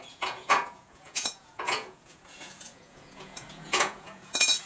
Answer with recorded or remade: remade